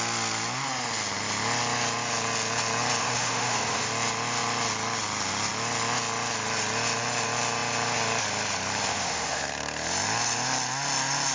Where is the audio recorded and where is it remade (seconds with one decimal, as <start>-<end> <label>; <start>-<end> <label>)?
0.0-3.0 recorded; 3.0-3.9 remade; 3.9-8.9 recorded; 8.9-9.4 remade; 9.4-11.3 recorded